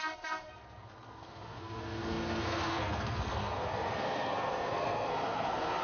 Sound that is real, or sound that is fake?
fake